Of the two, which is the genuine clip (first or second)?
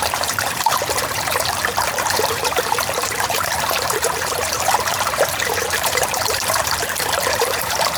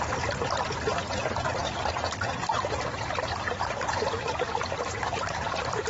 second